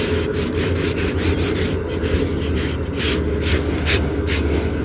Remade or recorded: recorded